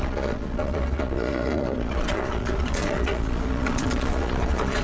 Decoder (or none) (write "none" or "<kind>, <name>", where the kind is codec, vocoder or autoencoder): vocoder, Vocos